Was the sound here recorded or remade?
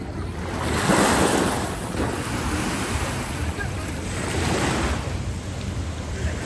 recorded